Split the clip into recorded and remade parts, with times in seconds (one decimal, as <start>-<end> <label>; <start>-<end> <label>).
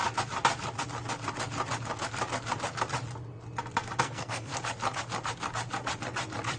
0.0-4.0 recorded; 4.0-4.5 remade; 4.5-6.6 recorded